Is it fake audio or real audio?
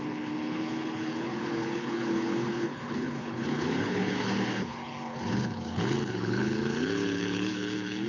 fake